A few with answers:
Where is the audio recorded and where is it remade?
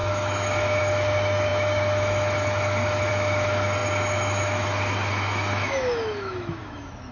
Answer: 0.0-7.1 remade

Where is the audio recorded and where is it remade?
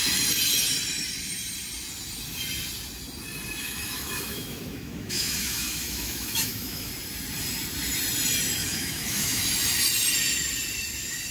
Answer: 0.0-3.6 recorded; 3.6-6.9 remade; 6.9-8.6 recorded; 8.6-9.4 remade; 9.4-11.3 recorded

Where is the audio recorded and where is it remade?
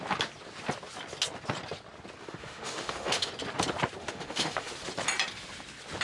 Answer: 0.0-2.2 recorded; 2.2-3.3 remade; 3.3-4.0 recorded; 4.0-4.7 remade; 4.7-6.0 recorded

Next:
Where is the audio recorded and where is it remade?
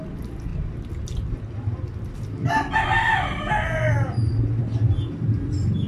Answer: 0.0-5.9 recorded